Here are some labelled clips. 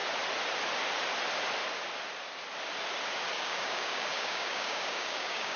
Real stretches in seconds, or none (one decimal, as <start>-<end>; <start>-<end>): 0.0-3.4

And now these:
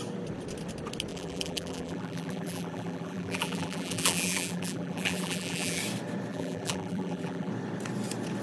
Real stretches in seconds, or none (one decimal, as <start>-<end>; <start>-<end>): 0.0-1.1; 5.8-6.3; 7.5-8.4

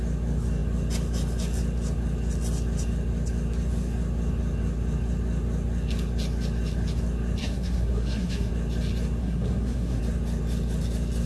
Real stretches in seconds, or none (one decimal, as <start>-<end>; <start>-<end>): 0.0-7.4; 8.5-9.2; 10.0-11.3